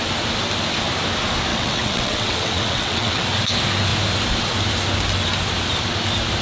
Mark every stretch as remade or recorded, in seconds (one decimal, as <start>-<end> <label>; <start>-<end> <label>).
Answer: 0.0-1.5 recorded; 1.5-3.2 remade; 3.2-6.4 recorded